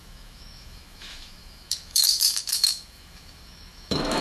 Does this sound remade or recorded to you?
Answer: remade